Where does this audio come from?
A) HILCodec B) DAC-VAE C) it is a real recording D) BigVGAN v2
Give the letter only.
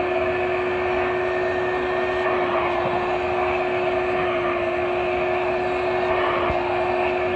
C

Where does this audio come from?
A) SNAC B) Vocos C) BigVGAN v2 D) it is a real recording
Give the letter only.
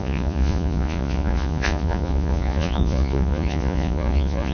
B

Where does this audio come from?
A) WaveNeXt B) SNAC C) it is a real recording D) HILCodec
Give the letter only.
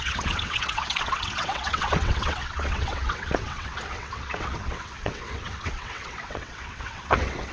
A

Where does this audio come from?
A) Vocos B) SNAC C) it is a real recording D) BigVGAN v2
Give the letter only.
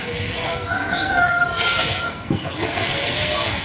B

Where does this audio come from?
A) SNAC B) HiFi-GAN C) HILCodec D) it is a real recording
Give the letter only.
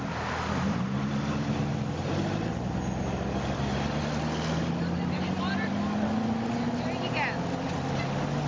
D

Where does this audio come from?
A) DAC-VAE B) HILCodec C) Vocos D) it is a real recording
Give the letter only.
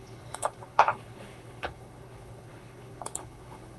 B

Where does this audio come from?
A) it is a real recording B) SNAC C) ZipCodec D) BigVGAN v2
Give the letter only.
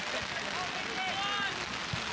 A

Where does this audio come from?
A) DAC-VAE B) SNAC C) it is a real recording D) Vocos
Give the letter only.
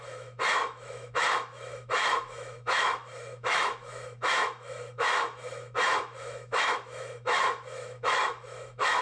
A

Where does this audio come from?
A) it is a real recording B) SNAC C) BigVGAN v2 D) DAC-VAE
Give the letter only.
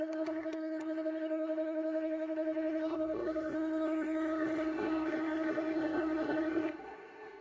B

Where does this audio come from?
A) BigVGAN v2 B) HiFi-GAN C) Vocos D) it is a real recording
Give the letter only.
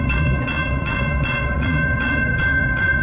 C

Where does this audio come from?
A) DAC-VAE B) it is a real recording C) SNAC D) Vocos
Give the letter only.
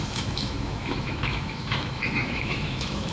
A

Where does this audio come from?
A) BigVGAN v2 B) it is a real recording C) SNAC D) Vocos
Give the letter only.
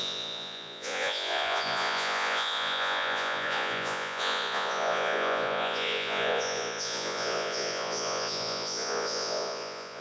D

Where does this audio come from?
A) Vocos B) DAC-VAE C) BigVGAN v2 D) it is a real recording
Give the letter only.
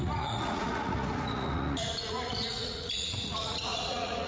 A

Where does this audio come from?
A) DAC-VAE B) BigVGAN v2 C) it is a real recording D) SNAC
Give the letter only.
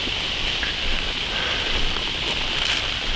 C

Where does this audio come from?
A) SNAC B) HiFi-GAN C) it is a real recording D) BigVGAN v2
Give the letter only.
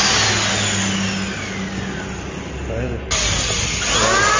C